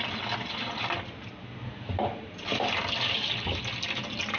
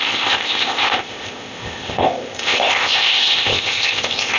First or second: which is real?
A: first